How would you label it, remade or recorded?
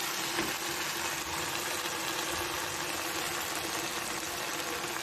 recorded